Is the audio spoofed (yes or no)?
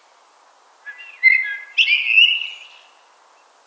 no